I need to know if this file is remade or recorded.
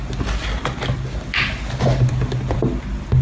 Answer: recorded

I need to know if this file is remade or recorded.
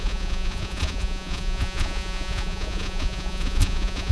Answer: remade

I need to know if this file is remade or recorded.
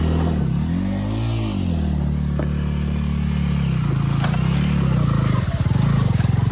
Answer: recorded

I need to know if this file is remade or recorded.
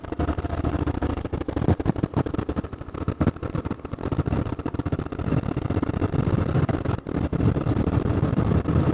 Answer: recorded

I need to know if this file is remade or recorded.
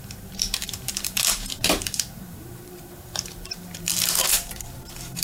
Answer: remade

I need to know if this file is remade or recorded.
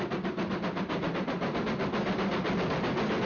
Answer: recorded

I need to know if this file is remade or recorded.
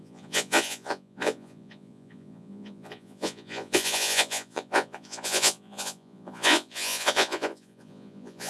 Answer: remade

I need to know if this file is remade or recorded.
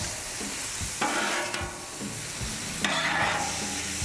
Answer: recorded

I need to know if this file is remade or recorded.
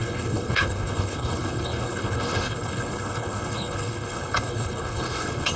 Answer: remade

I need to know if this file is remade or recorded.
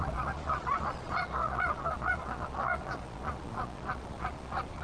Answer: remade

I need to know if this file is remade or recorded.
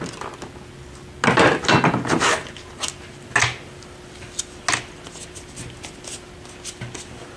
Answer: recorded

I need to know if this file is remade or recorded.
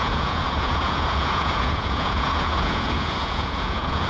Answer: remade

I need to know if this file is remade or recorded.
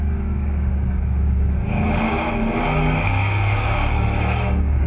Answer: remade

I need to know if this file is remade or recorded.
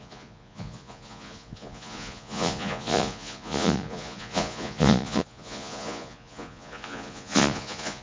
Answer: remade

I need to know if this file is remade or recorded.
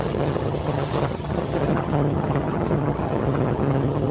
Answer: remade